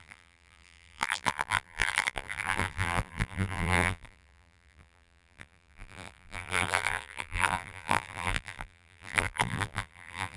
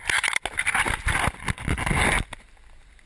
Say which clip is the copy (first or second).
first